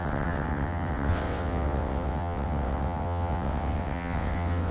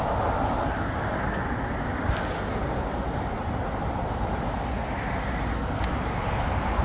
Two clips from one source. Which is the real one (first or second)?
second